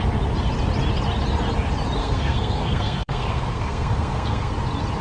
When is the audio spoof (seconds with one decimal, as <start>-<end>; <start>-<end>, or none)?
2.0-4.5